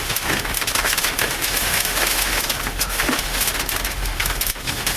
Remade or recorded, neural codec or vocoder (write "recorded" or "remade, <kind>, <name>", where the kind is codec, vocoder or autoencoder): remade, autoencoder, DAC-VAE